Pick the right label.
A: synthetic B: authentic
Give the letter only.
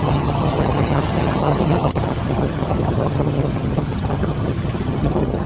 A